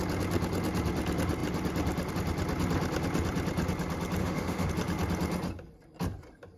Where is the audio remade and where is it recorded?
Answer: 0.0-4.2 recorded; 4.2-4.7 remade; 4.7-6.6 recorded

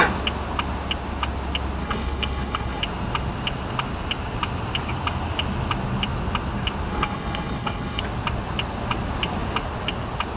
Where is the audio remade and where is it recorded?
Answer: 0.0-1.8 recorded; 1.8-2.8 remade; 2.8-6.9 recorded; 6.9-8.0 remade; 8.0-10.4 recorded

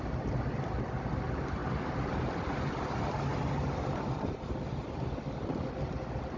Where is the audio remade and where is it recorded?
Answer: 0.0-6.4 recorded

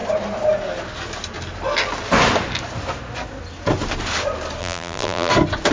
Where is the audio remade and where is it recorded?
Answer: 0.0-4.6 recorded; 4.6-5.3 remade; 5.3-5.7 recorded

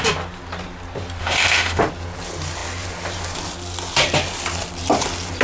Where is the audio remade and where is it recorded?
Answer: 0.0-1.2 recorded; 1.2-1.8 remade; 1.8-5.4 recorded

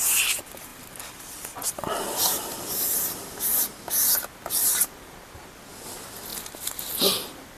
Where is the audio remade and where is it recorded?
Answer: 0.0-7.6 recorded

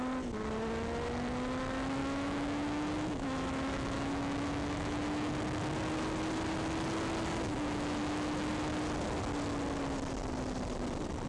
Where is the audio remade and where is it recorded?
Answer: 0.0-2.0 recorded; 2.0-5.3 remade; 5.3-7.5 recorded; 7.5-8.5 remade; 8.5-11.3 recorded

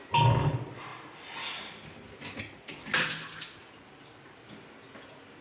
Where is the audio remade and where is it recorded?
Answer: 0.0-5.4 recorded